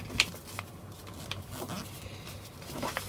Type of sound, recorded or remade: recorded